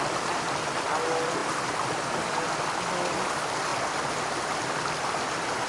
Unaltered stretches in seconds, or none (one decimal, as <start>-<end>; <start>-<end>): 0.0-5.7